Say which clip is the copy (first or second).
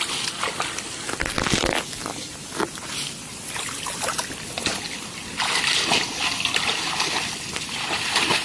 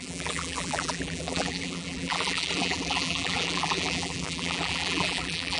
second